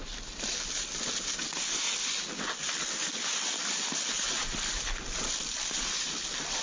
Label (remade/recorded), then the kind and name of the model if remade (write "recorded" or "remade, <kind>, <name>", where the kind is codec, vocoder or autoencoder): recorded